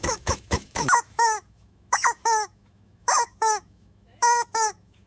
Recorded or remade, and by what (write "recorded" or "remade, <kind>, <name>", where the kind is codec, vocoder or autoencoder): remade, autoencoder, DAC-VAE